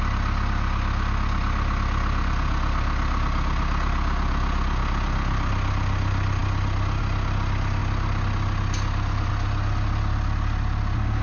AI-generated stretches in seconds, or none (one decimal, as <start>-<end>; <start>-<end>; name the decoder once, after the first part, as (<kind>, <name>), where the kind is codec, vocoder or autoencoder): none